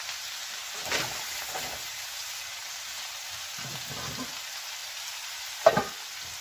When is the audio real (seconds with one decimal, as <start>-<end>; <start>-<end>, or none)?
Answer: 0.0-4.8; 5.7-6.4